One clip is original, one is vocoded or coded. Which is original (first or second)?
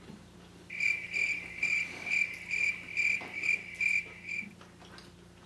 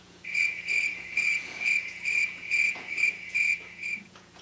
first